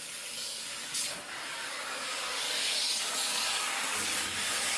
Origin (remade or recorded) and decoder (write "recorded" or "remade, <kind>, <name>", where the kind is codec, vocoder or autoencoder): remade, codec, DAC